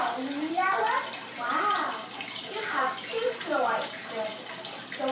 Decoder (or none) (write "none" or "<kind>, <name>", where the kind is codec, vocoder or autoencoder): none